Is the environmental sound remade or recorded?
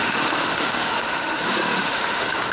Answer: remade